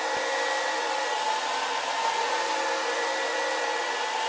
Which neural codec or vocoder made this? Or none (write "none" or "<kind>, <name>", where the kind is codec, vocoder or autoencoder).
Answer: none